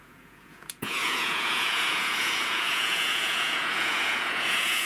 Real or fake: fake